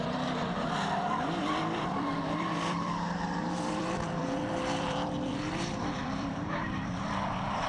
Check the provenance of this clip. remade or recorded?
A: remade